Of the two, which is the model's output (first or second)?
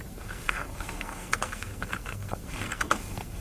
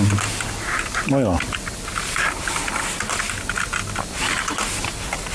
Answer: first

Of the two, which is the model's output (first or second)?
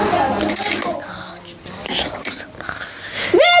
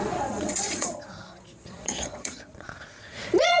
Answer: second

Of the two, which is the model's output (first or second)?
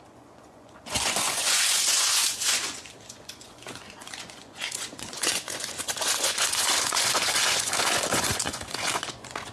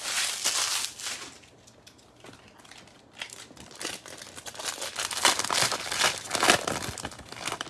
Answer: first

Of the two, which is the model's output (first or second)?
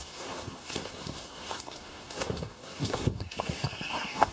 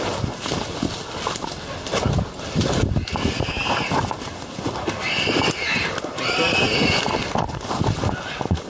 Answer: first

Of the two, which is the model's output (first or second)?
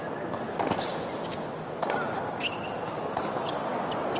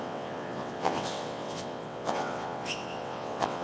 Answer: second